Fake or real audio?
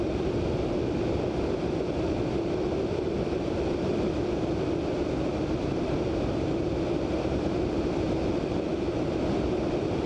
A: fake